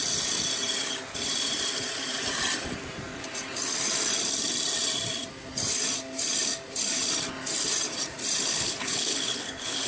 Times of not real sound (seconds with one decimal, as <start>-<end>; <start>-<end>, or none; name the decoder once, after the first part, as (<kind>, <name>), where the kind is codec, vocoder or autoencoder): 8.5-9.9 (codec, HILCodec)